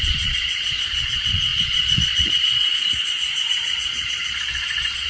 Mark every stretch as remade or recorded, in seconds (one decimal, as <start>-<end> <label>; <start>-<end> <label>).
0.0-5.1 remade